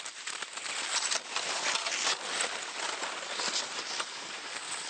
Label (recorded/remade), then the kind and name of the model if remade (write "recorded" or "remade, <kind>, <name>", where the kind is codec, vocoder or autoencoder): recorded